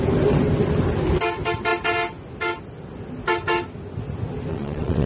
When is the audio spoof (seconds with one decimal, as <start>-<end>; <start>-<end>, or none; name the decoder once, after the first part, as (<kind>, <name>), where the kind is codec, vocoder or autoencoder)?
4.5-5.1 (vocoder, Vocos)